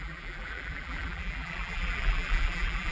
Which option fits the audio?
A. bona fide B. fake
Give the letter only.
B